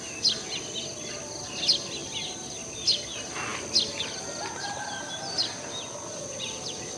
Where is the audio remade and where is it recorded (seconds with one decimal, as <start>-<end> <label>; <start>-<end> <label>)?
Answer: 0.0-7.0 recorded